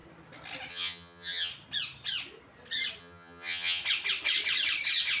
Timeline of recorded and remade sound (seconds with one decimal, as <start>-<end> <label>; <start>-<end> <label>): 0.0-0.7 recorded; 0.7-1.5 remade; 1.5-3.0 recorded; 3.0-3.8 remade; 3.8-5.2 recorded